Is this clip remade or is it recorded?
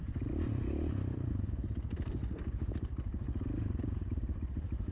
remade